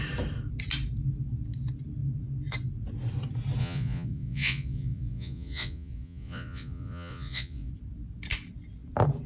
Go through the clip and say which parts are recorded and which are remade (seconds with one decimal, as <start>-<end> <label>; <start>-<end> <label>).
0.0-3.6 recorded; 3.6-7.7 remade; 7.7-9.3 recorded